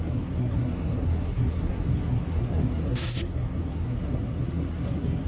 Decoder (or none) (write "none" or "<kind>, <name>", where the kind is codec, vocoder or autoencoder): codec, SNAC